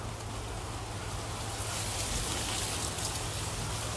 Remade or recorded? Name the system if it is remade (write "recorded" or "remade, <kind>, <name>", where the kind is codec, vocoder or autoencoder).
recorded